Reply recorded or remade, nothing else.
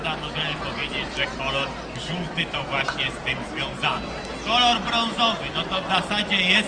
recorded